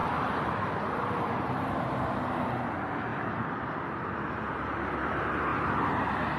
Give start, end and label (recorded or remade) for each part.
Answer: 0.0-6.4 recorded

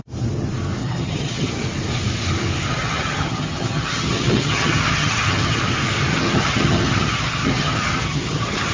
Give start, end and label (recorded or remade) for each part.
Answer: 0.0-0.8 recorded; 0.8-1.5 remade; 1.5-2.7 recorded; 2.7-5.6 remade; 5.6-6.1 recorded; 6.1-8.7 remade

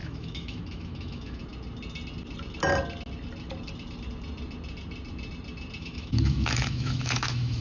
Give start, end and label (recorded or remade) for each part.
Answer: 0.0-1.4 remade; 1.4-5.8 recorded; 5.8-7.6 remade